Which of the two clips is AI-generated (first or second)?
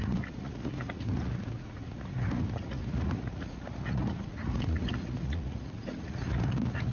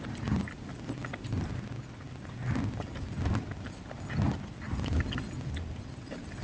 first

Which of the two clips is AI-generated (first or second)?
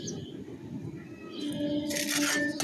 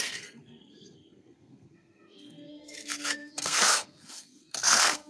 second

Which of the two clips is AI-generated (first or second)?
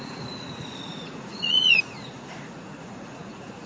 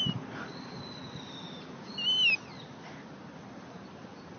first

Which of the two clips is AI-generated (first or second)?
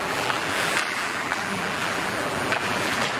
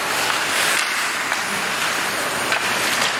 first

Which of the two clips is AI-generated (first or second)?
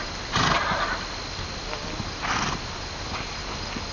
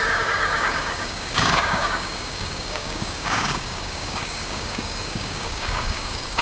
second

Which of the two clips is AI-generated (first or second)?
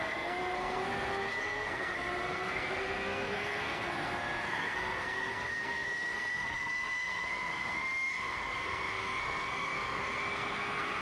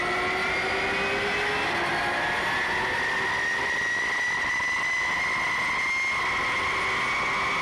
first